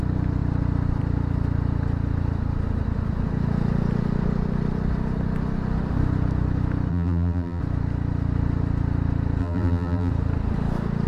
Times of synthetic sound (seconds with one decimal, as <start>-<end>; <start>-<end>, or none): 6.9-7.6; 9.4-10.1